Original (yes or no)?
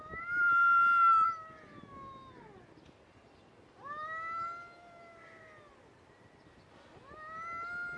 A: yes